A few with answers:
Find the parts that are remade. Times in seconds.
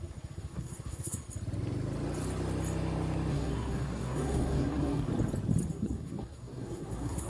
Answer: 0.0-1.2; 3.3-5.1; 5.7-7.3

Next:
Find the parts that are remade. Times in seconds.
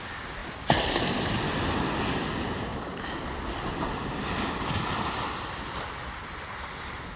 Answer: none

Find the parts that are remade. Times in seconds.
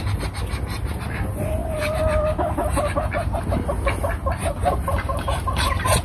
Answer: none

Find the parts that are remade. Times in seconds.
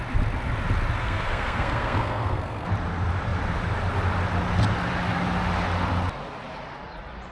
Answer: 1.0-2.7